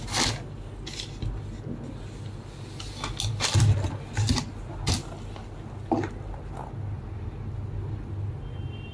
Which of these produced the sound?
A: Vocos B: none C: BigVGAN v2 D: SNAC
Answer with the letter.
B